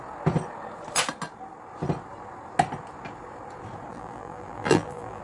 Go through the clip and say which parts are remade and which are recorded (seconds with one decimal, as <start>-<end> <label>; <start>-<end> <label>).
0.0-3.9 recorded; 3.9-5.2 remade